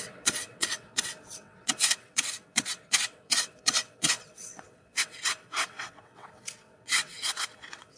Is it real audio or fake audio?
fake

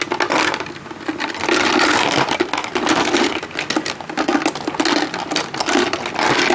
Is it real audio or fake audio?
real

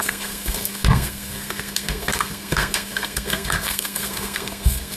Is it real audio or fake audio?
fake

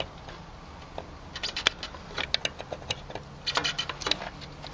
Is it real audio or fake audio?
real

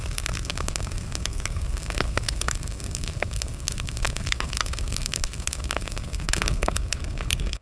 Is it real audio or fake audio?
fake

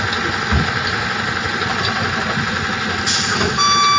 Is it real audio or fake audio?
real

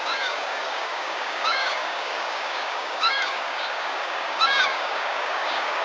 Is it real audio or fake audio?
fake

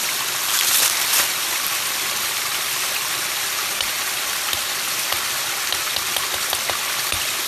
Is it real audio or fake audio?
real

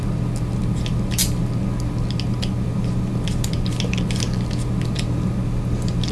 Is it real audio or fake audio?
real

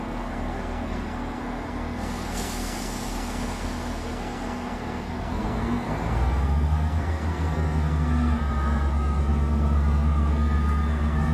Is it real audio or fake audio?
fake